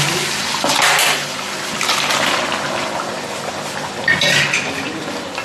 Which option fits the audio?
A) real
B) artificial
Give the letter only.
A